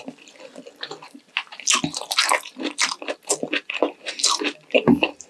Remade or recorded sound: recorded